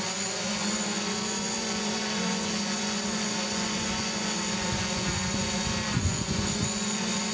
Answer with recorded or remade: remade